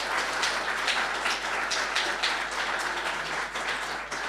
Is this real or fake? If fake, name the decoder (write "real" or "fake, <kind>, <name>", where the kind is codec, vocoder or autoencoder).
real